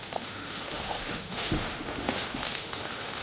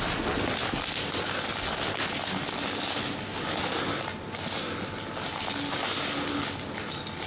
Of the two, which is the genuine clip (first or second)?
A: second